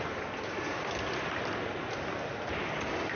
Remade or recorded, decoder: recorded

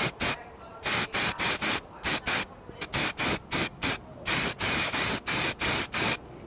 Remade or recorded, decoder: recorded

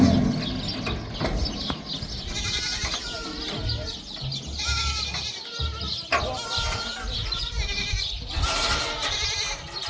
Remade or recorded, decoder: recorded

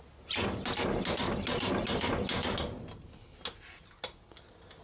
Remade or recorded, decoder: recorded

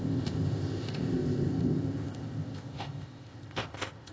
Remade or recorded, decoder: remade, codec, ZipCodec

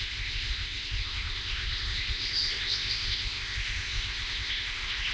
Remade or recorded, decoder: remade, codec, ZipCodec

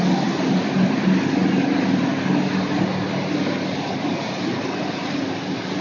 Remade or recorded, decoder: recorded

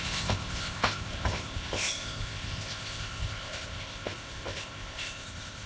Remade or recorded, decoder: remade, codec, ZipCodec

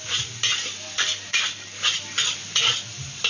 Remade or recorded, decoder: recorded